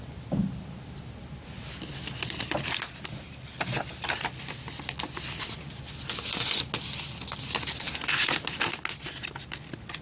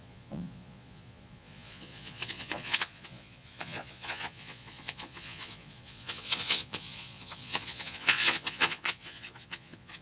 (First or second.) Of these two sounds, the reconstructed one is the second